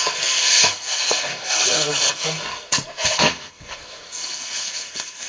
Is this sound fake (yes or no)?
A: yes